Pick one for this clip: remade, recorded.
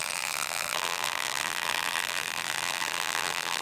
remade